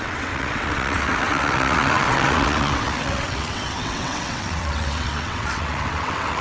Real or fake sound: fake